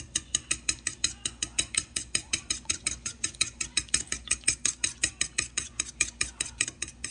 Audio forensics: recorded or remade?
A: remade